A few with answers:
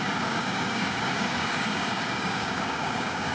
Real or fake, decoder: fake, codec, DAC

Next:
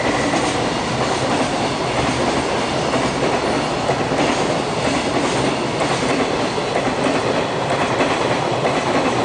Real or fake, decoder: real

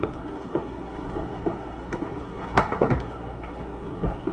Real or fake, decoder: fake, codec, SNAC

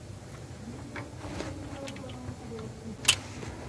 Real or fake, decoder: real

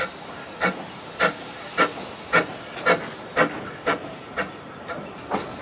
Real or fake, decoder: real